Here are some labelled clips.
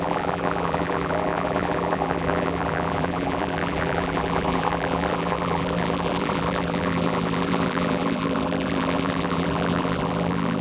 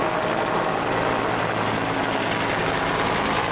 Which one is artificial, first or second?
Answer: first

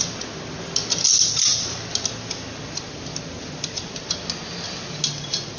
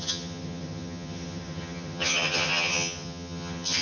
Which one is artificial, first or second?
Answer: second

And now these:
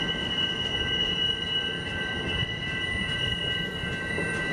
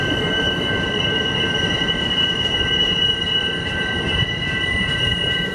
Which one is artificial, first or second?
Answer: second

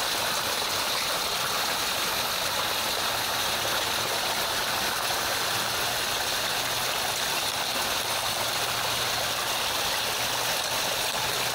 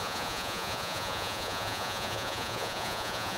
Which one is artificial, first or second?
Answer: second